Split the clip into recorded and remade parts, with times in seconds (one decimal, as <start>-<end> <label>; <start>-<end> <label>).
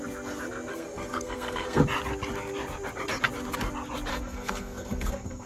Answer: 0.0-0.7 recorded; 0.7-1.8 remade; 1.8-4.1 recorded; 4.1-5.5 remade